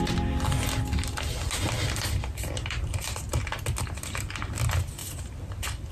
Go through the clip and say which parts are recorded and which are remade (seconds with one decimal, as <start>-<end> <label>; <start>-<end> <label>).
0.0-5.9 recorded